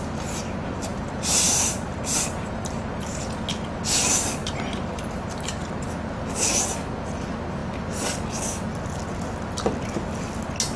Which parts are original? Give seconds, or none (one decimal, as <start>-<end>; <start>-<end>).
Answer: 0.0-0.9; 3.2-4.4; 5.9-10.8